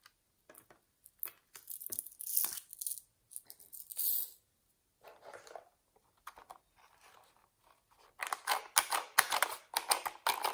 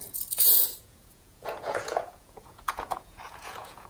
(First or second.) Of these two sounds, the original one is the first